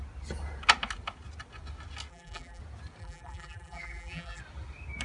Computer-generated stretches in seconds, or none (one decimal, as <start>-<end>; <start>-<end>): 2.1-2.6; 3.0-4.4